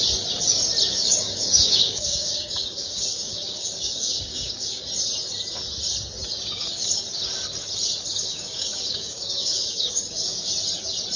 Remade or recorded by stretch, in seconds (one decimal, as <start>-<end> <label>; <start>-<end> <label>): 0.0-0.9 recorded; 0.9-4.8 remade; 4.8-6.2 recorded; 6.2-7.0 remade; 7.0-8.1 recorded; 8.1-10.5 remade; 10.5-11.2 recorded